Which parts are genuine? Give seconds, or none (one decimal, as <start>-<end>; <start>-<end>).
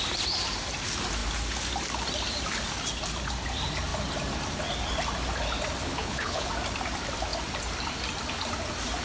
0.0-5.8; 6.5-9.0